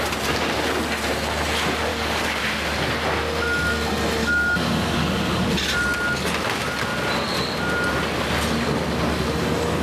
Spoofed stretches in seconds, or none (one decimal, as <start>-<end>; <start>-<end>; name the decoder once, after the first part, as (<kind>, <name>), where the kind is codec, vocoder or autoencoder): 1.9-2.4 (codec, DAC); 4.2-5.5